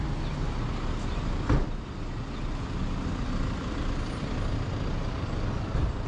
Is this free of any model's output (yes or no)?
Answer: yes